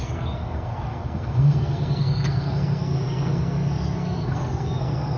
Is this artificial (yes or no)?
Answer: yes